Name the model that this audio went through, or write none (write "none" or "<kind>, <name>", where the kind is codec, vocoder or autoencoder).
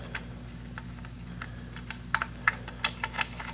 none